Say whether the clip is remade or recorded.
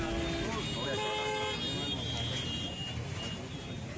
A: recorded